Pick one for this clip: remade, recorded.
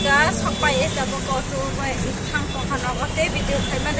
recorded